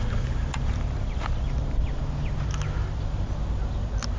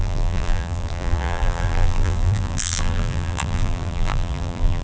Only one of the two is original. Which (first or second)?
first